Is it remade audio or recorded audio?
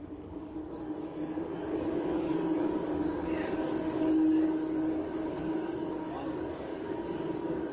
remade